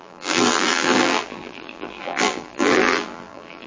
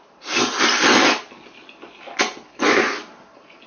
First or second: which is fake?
first